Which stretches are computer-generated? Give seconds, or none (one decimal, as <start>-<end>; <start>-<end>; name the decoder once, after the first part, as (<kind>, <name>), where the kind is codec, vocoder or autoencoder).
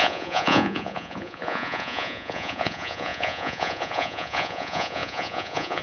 0.0-5.8 (vocoder, Vocos)